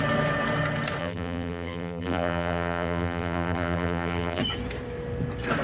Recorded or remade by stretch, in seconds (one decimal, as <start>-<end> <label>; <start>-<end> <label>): 0.0-1.0 recorded; 1.0-4.4 remade; 4.4-5.6 recorded

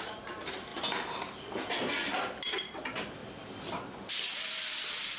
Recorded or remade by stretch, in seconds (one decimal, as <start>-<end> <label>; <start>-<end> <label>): 0.0-5.2 recorded